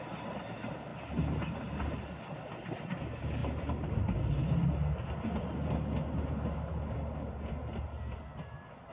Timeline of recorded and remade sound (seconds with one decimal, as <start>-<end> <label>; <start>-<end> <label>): 0.0-8.9 recorded